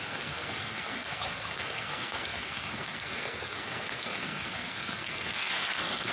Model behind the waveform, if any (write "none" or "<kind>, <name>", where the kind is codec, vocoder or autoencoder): codec, SNAC